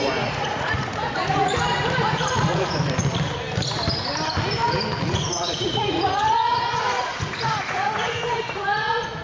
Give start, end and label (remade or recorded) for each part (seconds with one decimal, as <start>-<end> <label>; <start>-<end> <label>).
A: 0.0-3.0 remade; 3.0-5.1 recorded; 5.1-9.2 remade